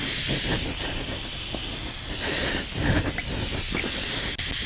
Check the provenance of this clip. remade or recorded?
recorded